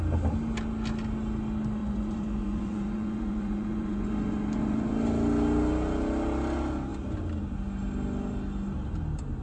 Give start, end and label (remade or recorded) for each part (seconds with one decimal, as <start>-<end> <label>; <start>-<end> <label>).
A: 0.0-1.8 recorded; 1.8-4.9 remade; 4.9-9.4 recorded